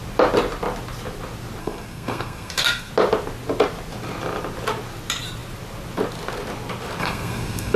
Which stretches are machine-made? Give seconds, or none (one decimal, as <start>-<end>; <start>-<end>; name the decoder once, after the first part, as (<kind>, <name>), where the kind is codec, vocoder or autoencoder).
1.6-2.9 (codec, SNAC); 7.0-7.8